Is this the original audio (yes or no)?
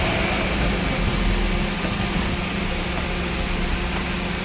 yes